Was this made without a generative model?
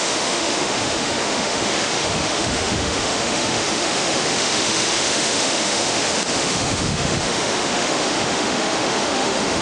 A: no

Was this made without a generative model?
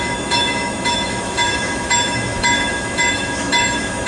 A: no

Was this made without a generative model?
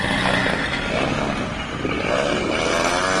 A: yes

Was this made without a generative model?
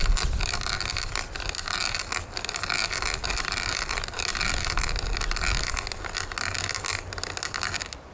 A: yes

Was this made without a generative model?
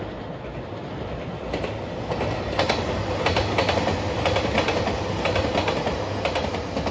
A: yes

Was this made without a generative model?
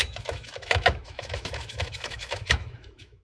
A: no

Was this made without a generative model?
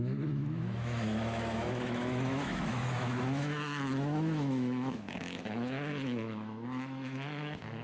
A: no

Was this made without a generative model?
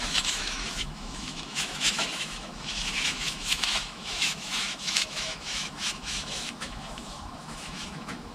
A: no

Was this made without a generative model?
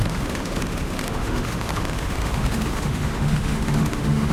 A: no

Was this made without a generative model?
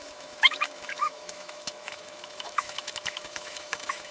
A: no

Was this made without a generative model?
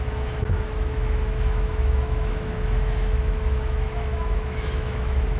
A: no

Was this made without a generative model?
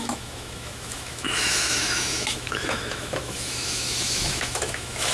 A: no